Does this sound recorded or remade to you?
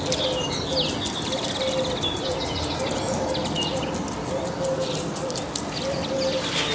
recorded